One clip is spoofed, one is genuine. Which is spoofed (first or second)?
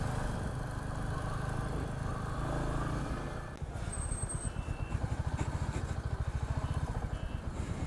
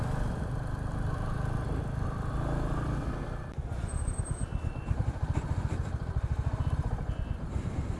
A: second